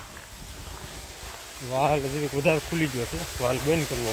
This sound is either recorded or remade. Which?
recorded